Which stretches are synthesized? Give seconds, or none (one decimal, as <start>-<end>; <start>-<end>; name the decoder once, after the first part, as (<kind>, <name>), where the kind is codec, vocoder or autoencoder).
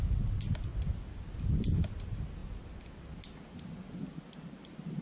none